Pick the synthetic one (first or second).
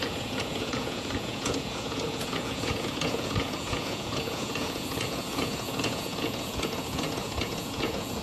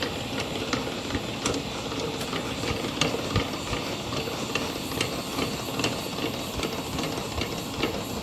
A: first